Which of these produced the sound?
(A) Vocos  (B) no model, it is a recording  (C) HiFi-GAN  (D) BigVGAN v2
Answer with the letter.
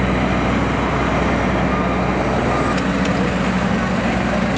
B